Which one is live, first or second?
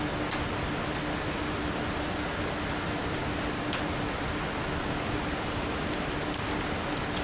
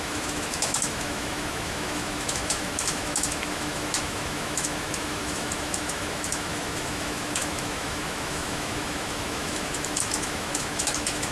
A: first